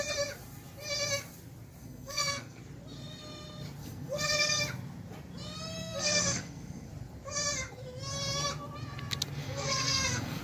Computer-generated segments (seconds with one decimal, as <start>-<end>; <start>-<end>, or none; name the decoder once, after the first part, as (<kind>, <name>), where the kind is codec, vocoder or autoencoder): 1.8-2.6 (codec, SNAC); 3.8-4.6; 5.8-6.9; 9.4-10.4